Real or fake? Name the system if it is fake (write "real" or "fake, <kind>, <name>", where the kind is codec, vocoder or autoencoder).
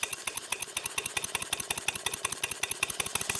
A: real